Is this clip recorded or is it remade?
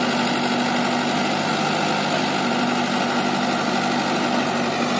recorded